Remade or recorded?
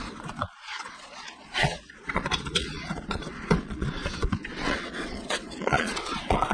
remade